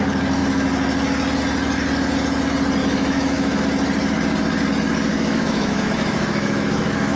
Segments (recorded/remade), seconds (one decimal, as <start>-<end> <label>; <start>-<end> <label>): 0.0-2.8 recorded; 2.8-3.6 remade; 3.6-5.1 recorded; 5.1-7.2 remade